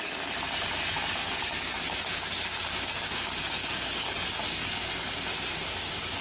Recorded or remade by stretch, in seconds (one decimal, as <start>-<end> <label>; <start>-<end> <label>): 0.0-1.2 recorded; 1.2-4.9 remade; 4.9-6.2 recorded